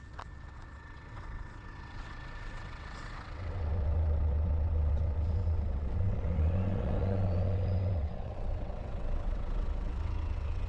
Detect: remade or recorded remade